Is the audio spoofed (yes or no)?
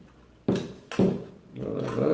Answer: no